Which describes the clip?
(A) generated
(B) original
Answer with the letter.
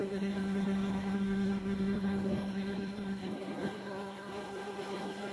A